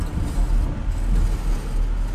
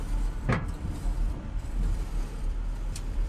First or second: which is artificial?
second